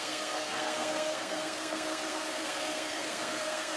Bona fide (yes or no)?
no